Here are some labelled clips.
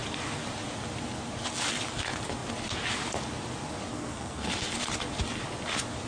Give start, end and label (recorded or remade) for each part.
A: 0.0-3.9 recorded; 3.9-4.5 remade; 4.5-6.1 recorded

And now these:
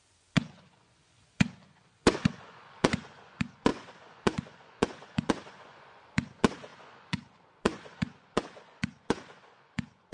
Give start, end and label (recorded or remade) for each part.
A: 0.0-10.1 remade

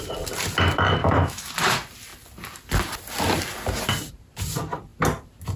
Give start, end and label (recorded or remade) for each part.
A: 0.0-1.0 recorded; 1.0-1.5 remade; 1.5-5.6 recorded

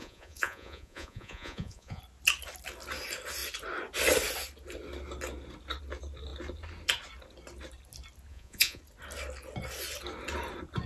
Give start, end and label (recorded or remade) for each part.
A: 0.0-2.0 remade; 2.0-8.3 recorded; 8.3-8.8 remade; 8.8-10.9 recorded

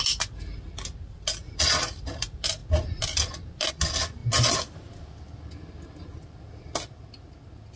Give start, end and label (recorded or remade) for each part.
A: 0.0-7.8 recorded